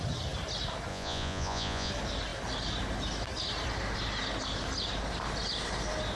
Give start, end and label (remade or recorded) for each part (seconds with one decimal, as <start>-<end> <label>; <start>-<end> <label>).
0.0-0.9 recorded; 0.9-1.9 remade; 1.9-6.2 recorded